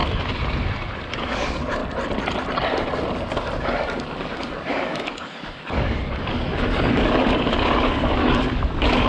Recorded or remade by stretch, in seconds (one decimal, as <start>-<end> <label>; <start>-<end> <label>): 0.0-1.2 recorded; 1.2-1.8 remade; 1.8-3.6 recorded; 3.6-9.1 remade